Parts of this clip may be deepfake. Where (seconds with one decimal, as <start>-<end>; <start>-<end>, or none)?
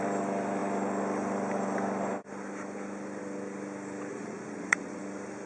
4.1-5.0